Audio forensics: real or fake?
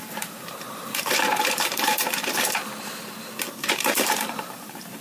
fake